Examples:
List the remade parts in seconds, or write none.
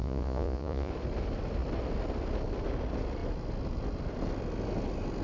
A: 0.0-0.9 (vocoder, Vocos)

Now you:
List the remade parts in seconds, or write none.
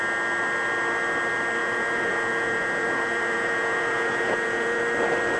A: 1.6-4.8 (vocoder, Vocos)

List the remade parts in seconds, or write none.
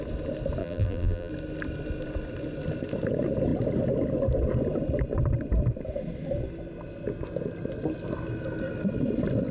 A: 0.6-1.3 (vocoder, BigVGAN v2)